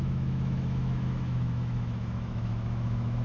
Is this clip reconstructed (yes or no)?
yes